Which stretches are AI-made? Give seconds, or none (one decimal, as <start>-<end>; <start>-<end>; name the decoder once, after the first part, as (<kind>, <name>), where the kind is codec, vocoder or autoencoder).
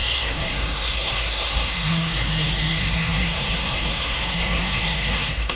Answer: 0.0-5.6 (codec, SNAC)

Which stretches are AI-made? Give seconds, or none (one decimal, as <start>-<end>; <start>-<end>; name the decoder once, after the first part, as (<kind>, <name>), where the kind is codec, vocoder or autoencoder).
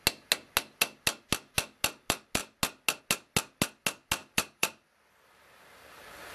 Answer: 4.2-6.3 (vocoder, BigVGAN v2)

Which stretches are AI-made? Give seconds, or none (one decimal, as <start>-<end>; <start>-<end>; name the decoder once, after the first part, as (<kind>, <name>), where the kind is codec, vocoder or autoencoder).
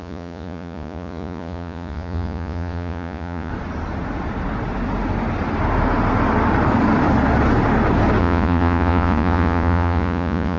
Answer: 0.0-3.5 (vocoder, Vocos); 8.2-10.6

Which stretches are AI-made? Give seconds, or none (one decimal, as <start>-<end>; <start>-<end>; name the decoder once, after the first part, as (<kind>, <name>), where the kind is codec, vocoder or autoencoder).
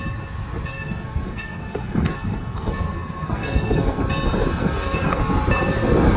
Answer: 0.7-4.0 (codec, SNAC); 4.5-5.2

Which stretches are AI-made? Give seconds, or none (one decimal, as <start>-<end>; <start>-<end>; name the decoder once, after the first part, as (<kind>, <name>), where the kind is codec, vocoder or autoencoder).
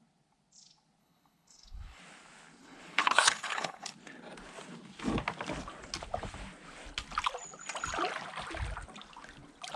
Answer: 1.0-2.0 (codec, HILCodec); 2.6-3.9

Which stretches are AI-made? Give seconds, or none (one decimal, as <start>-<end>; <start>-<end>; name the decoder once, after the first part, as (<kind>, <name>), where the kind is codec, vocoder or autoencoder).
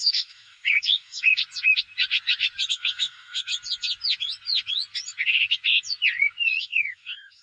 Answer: 0.0-1.4 (codec, DAC); 2.7-3.5; 6.6-7.4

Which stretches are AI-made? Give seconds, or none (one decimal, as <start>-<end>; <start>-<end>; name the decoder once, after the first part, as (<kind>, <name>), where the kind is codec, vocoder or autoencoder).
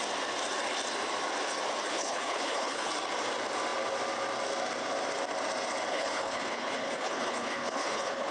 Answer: 1.9-2.9 (codec, HILCodec); 5.9-8.3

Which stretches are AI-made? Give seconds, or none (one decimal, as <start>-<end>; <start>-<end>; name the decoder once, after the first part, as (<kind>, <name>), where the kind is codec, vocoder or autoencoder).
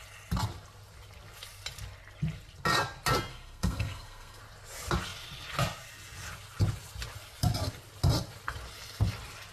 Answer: 3.3-4.4 (codec, SNAC)